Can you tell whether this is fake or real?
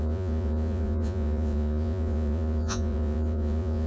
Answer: fake